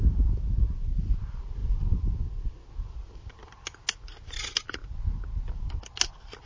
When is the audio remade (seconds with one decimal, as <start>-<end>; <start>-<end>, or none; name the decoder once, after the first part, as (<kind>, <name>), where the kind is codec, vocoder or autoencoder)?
none